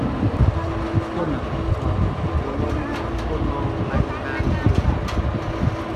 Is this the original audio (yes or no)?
yes